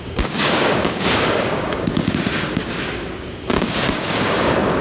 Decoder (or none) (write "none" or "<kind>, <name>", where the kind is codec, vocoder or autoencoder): codec, DAC